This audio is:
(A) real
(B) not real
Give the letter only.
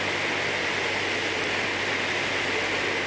A